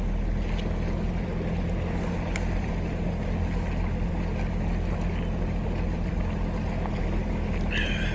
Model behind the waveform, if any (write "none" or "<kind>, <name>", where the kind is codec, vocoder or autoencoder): none